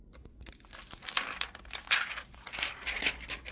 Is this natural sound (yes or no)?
yes